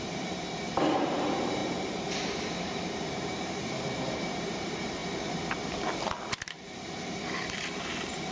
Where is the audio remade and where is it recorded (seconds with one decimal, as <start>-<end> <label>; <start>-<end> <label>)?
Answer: 0.0-5.0 remade; 5.0-7.1 recorded; 7.1-8.3 remade

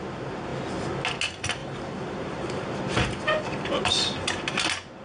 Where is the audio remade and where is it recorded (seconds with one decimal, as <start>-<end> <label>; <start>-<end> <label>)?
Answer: 0.0-1.6 recorded; 1.6-3.9 remade; 3.9-5.0 recorded

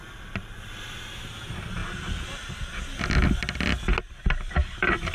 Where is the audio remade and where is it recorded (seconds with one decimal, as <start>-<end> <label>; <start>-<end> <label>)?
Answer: 0.0-0.8 remade; 0.8-5.1 recorded

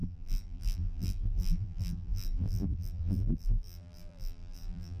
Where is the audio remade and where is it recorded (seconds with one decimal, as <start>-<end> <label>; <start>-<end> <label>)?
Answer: 0.0-5.0 remade

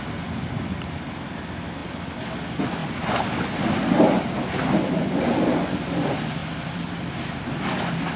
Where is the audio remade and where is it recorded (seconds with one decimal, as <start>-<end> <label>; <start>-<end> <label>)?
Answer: 0.0-1.8 recorded; 1.8-2.4 remade; 2.4-6.4 recorded; 6.4-7.1 remade; 7.1-8.2 recorded